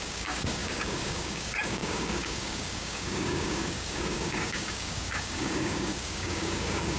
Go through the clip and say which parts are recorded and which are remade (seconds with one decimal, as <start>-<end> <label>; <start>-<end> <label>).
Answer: 0.0-7.0 remade